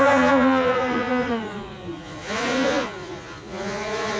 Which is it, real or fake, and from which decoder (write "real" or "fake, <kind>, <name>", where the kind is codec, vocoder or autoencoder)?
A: fake, vocoder, Vocos